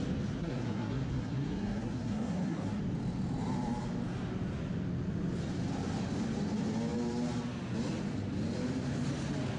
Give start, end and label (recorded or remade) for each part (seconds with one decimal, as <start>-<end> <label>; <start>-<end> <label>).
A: 0.0-0.4 recorded; 0.4-2.8 remade; 2.8-9.6 recorded